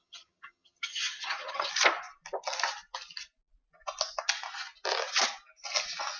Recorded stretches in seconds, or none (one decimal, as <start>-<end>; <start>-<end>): 1.7-6.2